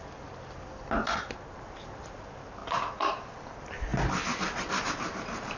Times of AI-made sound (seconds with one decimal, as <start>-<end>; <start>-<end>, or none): none

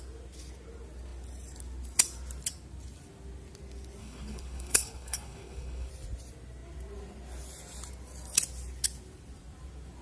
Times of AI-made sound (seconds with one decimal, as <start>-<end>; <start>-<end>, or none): 4.0-5.9